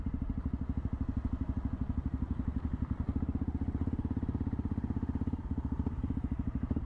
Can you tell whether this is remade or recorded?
recorded